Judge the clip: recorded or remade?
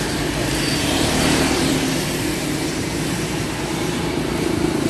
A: remade